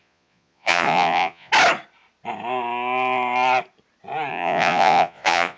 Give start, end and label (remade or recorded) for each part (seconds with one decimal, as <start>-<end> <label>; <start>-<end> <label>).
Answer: 0.0-1.5 remade; 1.5-4.3 recorded; 4.3-5.6 remade